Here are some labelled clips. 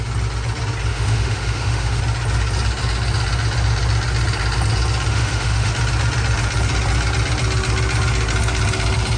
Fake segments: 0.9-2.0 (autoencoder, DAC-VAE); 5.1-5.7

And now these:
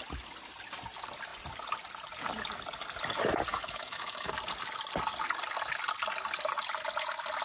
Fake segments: 3.5-4.3 (autoencoder, DAC-VAE)

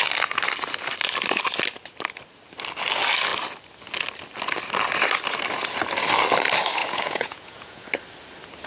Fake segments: 6.8-7.9 (vocoder, Vocos)

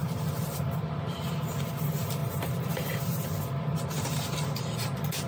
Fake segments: 0.0-0.9 (vocoder, BigVGAN v2); 2.2-3.0

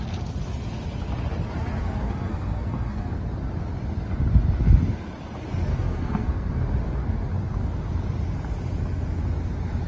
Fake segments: 1.8-3.2 (codec, SNAC); 5.7-6.5

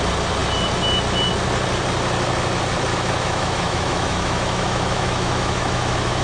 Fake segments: 2.9-6.2 (autoencoder, DAC-VAE)